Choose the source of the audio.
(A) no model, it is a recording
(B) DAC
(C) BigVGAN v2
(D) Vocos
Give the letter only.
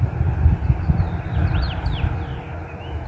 A